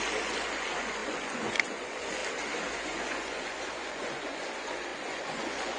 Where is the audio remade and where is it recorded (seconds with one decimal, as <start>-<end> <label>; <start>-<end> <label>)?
0.0-2.2 remade; 2.2-2.7 recorded; 2.7-5.8 remade